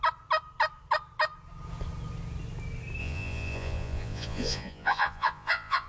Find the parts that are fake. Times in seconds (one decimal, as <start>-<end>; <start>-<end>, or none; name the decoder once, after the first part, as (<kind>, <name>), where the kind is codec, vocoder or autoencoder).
3.0-5.9 (vocoder, Vocos)